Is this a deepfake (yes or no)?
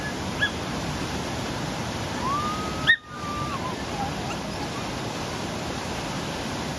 no